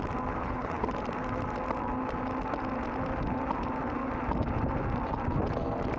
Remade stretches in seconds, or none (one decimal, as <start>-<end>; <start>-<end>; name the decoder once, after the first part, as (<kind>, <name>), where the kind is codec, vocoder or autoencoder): 0.4-0.9 (codec, HILCodec)

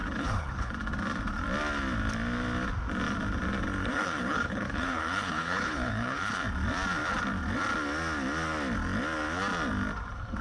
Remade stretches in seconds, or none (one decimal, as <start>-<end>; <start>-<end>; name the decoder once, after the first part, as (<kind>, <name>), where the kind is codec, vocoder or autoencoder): 0.0-0.7 (codec, HILCodec); 3.9-6.4

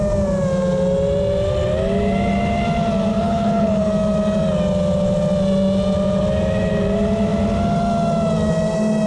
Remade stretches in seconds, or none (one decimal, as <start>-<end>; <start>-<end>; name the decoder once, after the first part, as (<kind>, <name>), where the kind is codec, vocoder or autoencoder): 3.1-3.9 (codec, HILCodec)

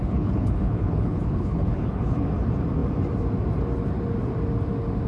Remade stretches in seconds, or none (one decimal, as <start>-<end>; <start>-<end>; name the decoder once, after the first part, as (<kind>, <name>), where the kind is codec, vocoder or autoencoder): 0.0-2.3 (codec, HILCodec)

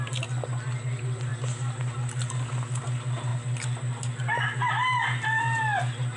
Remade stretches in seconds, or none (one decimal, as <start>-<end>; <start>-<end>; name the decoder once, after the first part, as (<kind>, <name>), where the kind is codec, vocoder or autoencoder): none

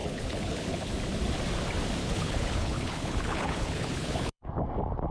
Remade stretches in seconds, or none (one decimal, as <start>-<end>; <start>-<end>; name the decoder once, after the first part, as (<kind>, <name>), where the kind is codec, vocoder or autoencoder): 0.0-0.9 (codec, HILCodec); 2.0-4.5

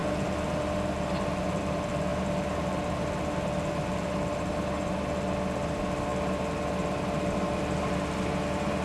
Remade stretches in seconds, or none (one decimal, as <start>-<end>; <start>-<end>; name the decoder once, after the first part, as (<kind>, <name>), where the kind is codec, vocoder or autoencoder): none

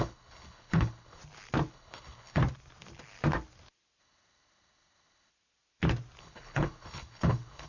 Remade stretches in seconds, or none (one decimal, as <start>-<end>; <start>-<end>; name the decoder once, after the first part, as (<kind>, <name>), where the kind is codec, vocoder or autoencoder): 0.0-1.2 (codec, HILCodec); 1.7-2.4; 4.0-5.3; 6.2-7.7